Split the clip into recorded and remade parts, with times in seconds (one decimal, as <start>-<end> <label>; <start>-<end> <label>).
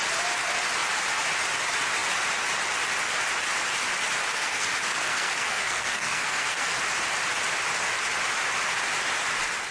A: 0.0-4.3 recorded; 4.3-6.8 remade; 6.8-9.7 recorded